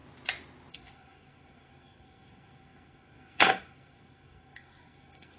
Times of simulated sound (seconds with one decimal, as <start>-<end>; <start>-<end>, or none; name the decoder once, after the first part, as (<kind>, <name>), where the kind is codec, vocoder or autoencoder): 0.7-5.4 (codec, SNAC)

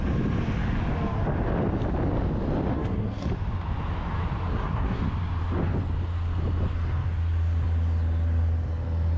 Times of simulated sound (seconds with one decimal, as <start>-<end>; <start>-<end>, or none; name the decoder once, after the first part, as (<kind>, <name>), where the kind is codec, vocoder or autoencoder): 2.7-3.3 (codec, SNAC); 4.5-5.0

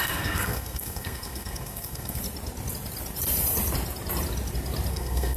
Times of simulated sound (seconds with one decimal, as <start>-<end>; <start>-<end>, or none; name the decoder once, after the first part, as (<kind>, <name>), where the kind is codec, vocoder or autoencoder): 0.0-2.2 (codec, SNAC); 4.9-5.4

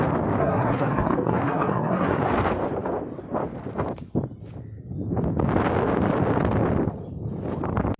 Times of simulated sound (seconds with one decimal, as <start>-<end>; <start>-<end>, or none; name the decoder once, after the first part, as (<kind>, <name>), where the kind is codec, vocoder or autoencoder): 0.4-2.2 (codec, SNAC)

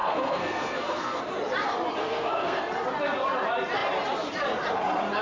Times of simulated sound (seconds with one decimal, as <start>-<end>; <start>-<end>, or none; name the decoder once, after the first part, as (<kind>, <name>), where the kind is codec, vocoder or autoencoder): 0.0-1.2 (codec, SNAC); 2.0-2.6

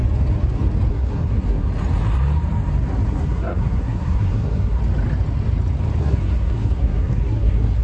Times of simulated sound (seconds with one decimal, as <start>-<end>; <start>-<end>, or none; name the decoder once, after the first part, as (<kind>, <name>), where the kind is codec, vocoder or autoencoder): 0.9-1.7 (codec, SNAC); 3.1-4.8; 6.0-7.8

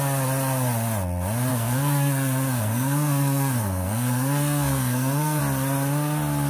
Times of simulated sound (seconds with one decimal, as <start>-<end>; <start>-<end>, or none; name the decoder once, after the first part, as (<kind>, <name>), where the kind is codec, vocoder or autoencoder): 1.5-5.4 (codec, SNAC)